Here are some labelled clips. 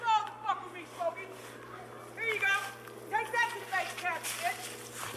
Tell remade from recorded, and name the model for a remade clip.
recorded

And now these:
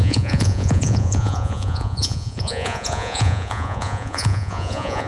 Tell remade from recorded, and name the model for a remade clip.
remade, vocoder, Vocos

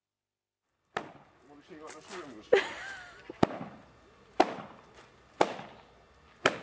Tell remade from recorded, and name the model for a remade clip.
recorded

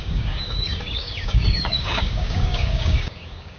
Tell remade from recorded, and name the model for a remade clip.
remade, codec, DAC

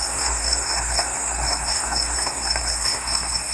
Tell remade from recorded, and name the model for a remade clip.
remade, codec, SNAC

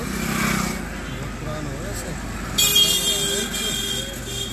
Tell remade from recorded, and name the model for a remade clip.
recorded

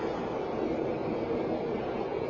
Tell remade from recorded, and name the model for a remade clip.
remade, vocoder, BigVGAN v2